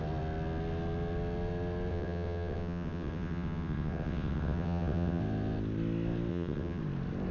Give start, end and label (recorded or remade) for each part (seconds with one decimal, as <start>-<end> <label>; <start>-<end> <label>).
0.0-1.9 recorded; 1.9-5.2 remade; 5.2-6.3 recorded; 6.3-6.8 remade; 6.8-7.3 recorded